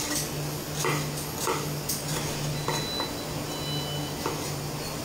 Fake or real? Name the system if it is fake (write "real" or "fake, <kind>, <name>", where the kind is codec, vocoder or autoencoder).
real